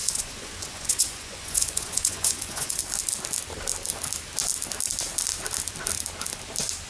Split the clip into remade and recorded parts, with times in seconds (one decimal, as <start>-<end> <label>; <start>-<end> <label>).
0.0-2.8 remade; 2.8-6.9 recorded